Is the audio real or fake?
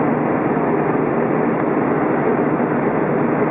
real